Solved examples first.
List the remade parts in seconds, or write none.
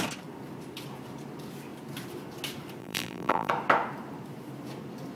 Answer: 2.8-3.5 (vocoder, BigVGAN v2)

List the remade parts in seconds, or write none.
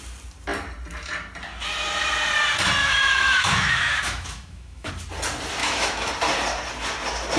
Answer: 2.8-4.9 (autoencoder, DAC-VAE); 5.6-6.1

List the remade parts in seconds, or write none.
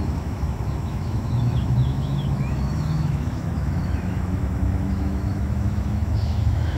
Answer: 0.0-6.8 (autoencoder, DAC-VAE)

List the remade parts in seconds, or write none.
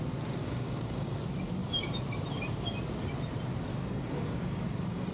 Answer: 0.4-1.2 (codec, DAC); 3.7-5.1